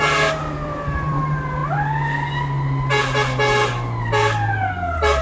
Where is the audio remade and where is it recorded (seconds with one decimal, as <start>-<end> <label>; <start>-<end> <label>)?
0.0-5.2 recorded